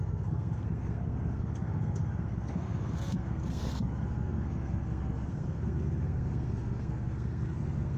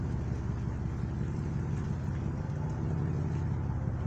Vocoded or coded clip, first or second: first